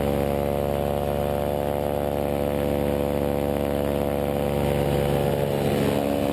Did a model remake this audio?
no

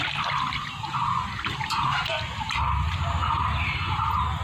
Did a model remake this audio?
yes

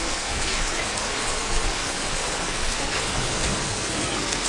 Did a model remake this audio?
yes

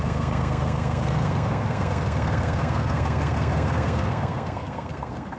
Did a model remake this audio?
yes